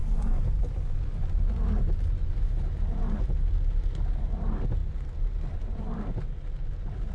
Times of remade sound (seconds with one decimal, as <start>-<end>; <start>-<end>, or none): none